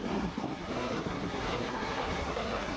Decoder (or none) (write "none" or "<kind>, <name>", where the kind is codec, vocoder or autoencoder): codec, SNAC